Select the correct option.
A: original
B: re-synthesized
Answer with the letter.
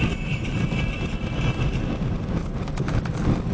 A